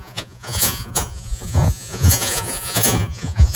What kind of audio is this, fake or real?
fake